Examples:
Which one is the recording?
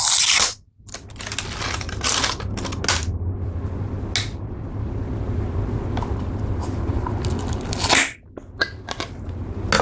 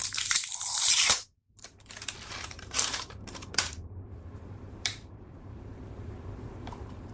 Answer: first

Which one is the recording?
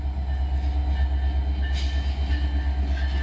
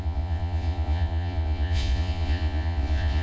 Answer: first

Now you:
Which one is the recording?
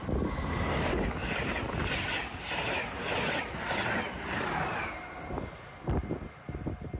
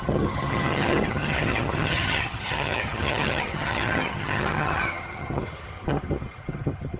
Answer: first